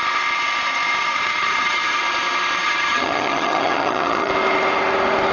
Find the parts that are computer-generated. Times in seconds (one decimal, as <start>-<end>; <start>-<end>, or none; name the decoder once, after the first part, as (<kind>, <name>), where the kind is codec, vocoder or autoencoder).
1.0-2.0 (vocoder, HiFi-GAN); 2.6-4.3